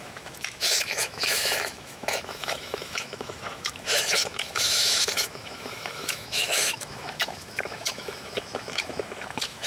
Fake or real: fake